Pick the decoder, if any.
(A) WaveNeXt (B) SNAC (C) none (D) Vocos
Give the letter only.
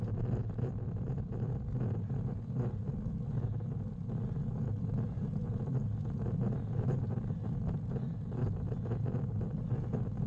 C